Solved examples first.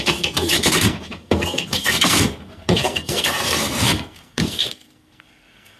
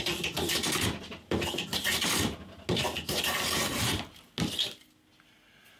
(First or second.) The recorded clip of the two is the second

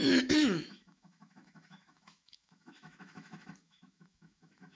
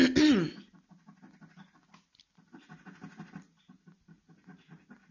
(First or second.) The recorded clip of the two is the second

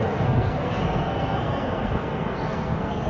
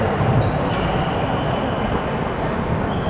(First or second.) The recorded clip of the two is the second